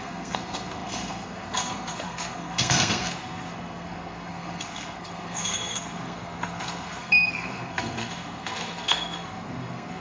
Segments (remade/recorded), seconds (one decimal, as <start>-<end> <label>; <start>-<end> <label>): 0.0-10.0 remade